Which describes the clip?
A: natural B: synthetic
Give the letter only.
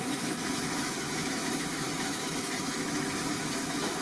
B